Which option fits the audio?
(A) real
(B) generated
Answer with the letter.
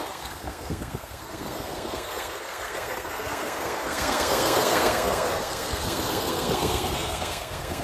B